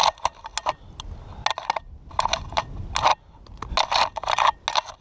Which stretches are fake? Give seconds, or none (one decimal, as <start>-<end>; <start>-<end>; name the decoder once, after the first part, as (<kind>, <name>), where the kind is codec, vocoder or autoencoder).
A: none